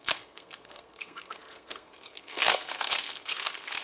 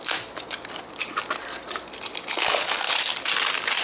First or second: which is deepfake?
first